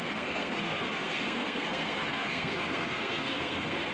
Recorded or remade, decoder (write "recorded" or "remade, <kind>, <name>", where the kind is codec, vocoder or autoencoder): remade, codec, SNAC